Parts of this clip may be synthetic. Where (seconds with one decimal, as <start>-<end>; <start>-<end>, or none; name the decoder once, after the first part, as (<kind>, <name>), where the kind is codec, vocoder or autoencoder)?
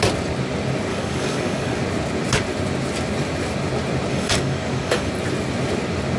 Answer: 0.9-1.8 (codec, DAC); 4.1-5.1